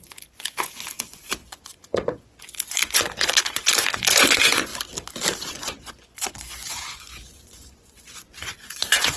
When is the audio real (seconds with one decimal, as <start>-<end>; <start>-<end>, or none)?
4.7-5.5